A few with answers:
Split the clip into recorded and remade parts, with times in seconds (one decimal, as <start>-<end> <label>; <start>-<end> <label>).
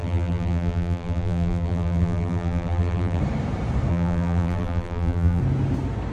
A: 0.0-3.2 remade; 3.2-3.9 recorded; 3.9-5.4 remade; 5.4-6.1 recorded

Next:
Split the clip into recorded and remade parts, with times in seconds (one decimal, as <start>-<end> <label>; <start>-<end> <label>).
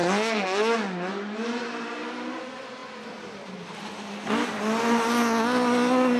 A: 0.0-6.2 recorded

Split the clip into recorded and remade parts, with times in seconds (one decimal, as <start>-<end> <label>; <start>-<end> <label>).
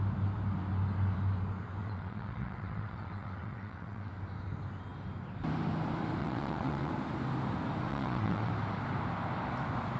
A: 0.0-1.8 recorded; 1.8-4.1 remade; 4.1-6.2 recorded; 6.2-6.9 remade; 6.9-7.9 recorded; 7.9-8.5 remade; 8.5-10.0 recorded